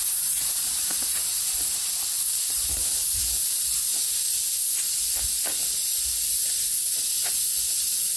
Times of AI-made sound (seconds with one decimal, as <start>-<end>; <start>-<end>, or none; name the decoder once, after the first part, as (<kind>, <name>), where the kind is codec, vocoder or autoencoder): 0.0-2.8 (vocoder, BigVGAN v2); 3.4-3.9; 7.6-8.2